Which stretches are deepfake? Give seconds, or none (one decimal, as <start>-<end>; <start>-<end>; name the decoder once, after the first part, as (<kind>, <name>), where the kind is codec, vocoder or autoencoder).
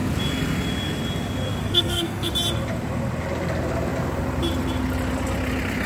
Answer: 1.6-2.3 (codec, SNAC)